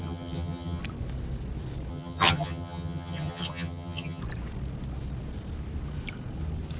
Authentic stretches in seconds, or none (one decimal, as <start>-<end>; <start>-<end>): 0.8-1.9; 4.2-6.8